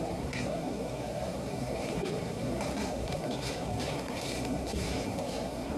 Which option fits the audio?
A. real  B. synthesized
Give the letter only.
B